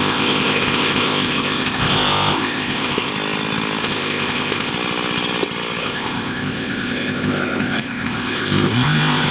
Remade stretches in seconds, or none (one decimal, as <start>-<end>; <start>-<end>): 0.0-3.1; 3.8-4.7; 5.8-9.3